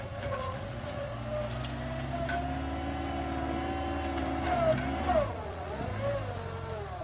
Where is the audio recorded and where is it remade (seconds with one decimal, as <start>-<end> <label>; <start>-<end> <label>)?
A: 0.0-1.1 remade; 1.1-5.3 recorded; 5.3-5.9 remade; 5.9-7.0 recorded